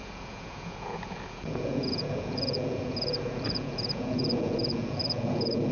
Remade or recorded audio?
remade